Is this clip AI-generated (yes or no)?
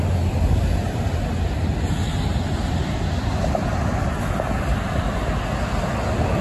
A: no